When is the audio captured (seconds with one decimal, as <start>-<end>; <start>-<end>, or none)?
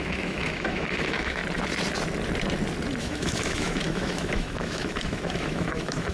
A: 1.4-3.0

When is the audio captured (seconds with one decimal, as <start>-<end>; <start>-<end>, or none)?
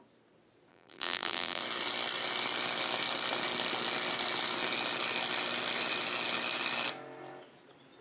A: 0.0-0.7; 1.6-8.0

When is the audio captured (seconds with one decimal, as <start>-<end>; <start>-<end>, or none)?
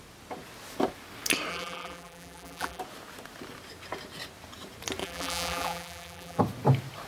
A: 0.0-1.5; 2.8-5.0; 6.4-7.1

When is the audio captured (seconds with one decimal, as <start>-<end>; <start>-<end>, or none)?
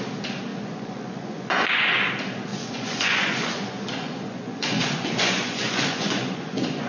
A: 0.0-0.5; 2.1-2.5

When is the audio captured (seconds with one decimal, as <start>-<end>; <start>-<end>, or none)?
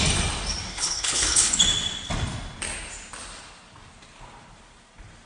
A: 0.0-0.7; 1.5-5.3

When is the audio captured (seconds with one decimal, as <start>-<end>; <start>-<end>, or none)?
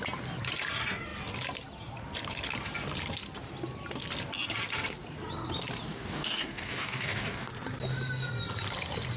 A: 0.0-5.9; 7.5-9.2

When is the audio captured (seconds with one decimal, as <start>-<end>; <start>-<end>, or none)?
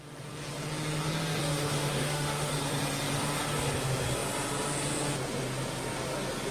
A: 0.0-1.4; 2.5-6.5